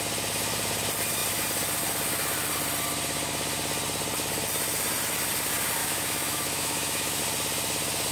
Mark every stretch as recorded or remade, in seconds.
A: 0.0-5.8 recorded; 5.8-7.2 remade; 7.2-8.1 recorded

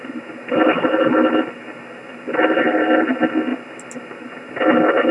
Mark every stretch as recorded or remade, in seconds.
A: 0.0-5.1 recorded